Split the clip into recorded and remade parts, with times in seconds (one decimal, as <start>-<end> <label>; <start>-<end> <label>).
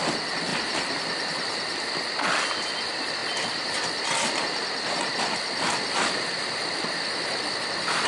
0.0-8.1 recorded